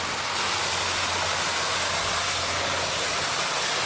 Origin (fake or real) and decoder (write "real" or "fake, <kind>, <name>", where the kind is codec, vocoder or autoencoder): real